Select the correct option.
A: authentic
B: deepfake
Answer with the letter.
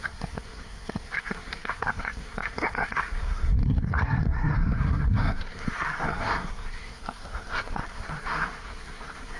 B